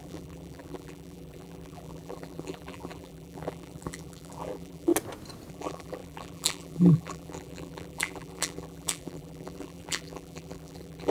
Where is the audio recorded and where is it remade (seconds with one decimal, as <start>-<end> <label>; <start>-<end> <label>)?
0.0-4.9 remade; 4.9-5.5 recorded; 5.5-11.1 remade